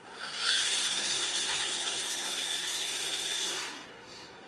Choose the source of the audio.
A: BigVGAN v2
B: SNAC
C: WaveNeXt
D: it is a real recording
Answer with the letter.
B